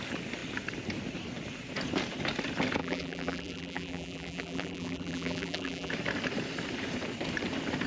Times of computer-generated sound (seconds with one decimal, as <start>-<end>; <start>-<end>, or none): 2.8-5.9